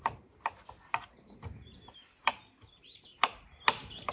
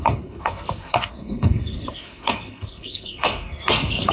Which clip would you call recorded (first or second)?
first